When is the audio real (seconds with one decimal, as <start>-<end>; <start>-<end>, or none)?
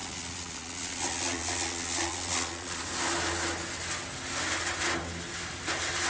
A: 2.8-6.1